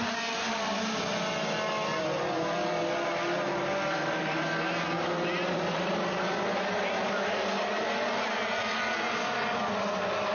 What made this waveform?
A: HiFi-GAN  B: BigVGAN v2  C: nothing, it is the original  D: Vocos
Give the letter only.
C